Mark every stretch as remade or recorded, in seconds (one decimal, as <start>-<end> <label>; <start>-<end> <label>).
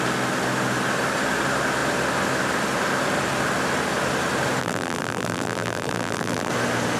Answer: 0.0-4.6 recorded; 4.6-6.5 remade; 6.5-7.0 recorded